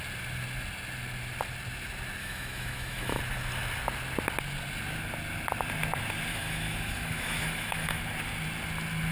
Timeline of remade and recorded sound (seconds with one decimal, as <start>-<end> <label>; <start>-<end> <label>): 0.0-2.2 recorded; 2.2-3.2 remade; 3.2-6.3 recorded; 6.3-8.0 remade; 8.0-9.1 recorded